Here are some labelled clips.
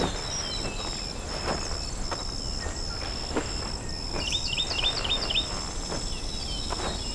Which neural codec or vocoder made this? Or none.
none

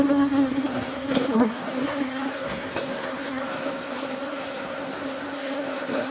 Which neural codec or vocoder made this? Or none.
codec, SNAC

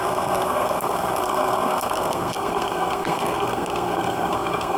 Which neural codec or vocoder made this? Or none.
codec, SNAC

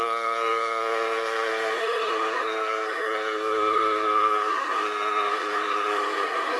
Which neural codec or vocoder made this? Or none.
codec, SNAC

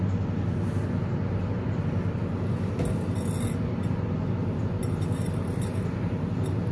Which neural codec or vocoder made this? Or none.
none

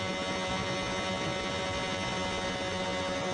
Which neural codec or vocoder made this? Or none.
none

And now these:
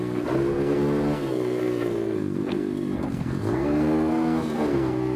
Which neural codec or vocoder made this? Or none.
codec, SNAC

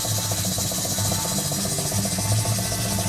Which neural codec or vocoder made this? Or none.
none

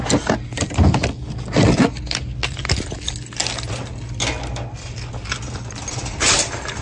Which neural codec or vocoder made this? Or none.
none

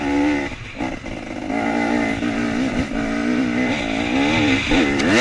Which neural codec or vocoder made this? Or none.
none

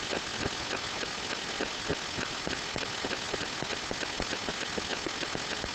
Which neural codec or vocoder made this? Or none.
none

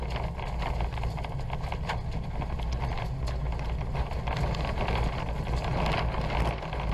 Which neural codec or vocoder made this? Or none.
none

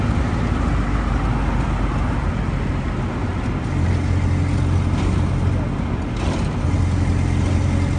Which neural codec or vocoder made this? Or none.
none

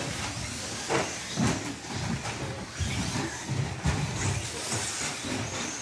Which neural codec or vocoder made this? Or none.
none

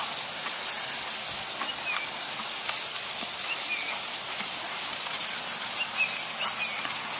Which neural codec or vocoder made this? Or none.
none